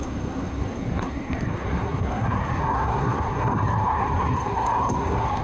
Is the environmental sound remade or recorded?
remade